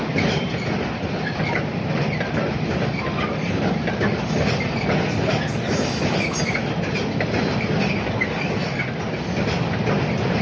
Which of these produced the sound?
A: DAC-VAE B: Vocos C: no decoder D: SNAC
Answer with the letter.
C